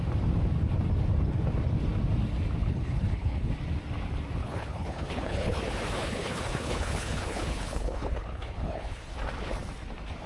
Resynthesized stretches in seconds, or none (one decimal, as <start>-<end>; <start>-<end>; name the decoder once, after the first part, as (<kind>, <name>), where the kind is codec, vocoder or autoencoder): 2.6-3.5 (codec, HILCodec); 4.4-5.6; 6.0-9.1